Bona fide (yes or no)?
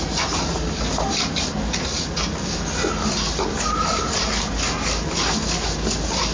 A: yes